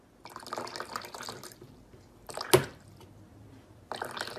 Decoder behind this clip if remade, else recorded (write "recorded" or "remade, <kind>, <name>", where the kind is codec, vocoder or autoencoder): recorded